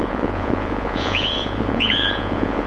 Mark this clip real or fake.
fake